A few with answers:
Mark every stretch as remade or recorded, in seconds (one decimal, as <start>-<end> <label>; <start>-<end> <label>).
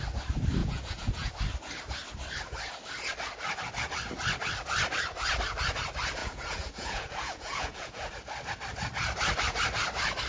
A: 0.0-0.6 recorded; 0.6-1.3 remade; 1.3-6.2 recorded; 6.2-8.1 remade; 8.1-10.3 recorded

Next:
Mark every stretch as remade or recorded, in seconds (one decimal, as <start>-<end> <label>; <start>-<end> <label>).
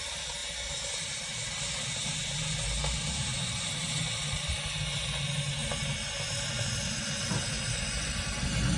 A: 0.0-8.8 recorded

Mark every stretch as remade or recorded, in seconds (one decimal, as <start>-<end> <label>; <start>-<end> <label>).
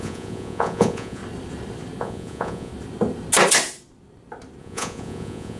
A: 0.0-1.2 remade; 1.2-2.0 recorded; 2.0-2.7 remade; 2.7-4.6 recorded; 4.6-5.6 remade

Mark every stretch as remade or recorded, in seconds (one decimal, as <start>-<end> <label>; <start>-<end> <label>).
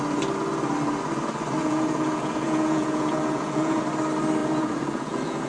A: 0.0-1.6 recorded; 1.6-3.8 remade; 3.8-4.4 recorded; 4.4-5.5 remade